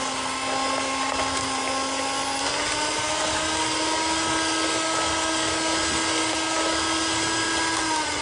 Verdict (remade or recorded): recorded